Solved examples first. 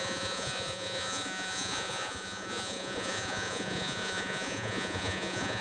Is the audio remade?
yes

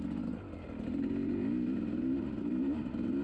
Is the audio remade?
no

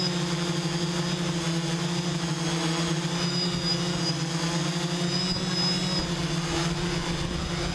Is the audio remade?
no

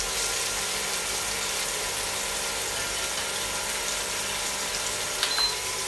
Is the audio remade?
no